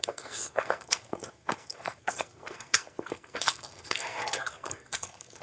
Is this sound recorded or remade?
remade